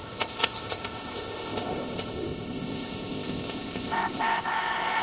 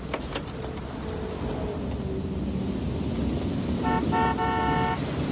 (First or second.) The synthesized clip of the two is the first